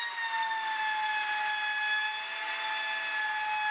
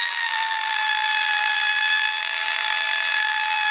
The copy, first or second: second